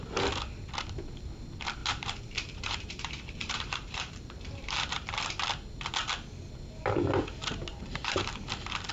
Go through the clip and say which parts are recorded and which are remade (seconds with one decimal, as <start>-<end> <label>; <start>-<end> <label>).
0.0-1.8 recorded; 1.8-5.2 remade; 5.2-7.7 recorded; 7.7-8.5 remade; 8.5-8.9 recorded